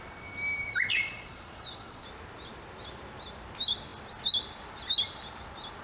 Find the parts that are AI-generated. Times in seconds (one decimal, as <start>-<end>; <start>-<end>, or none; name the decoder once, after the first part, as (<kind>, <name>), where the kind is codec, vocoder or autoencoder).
0.9-2.0 (vocoder, Vocos)

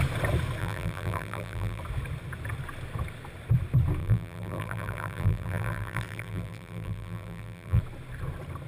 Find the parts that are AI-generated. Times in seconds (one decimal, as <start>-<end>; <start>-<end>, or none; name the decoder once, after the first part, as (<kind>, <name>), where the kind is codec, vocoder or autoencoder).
0.6-1.8 (vocoder, BigVGAN v2); 4.0-7.8

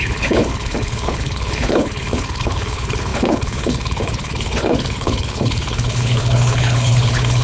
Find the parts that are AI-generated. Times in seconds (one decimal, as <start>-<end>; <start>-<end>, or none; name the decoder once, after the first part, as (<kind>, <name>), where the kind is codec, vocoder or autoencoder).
0.0-7.4 (codec, HILCodec)

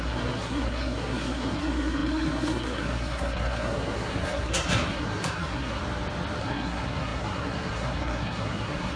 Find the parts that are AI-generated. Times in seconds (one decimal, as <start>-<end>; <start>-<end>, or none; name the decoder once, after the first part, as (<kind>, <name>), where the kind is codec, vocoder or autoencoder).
0.0-5.8 (codec, SNAC); 6.4-9.0

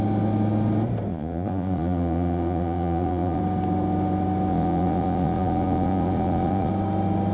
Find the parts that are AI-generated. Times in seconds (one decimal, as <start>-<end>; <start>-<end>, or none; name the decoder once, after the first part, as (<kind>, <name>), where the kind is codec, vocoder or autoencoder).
1.1-3.4 (vocoder, Vocos); 4.5-6.7

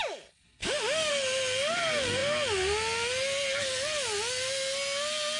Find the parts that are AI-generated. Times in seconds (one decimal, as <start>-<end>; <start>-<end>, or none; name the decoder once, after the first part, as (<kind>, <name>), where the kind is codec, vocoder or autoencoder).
0.6-1.1 (autoencoder, DAC-VAE)